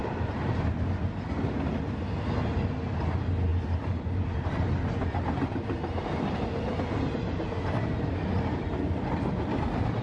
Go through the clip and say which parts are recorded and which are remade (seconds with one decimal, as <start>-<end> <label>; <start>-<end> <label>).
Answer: 0.0-10.0 recorded